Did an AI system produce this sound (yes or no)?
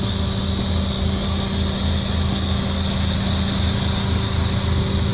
no